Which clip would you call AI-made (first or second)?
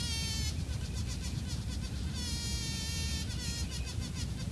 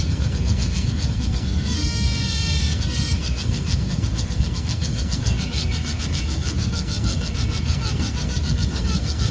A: second